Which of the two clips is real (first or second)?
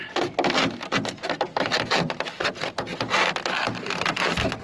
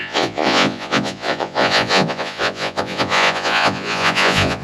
first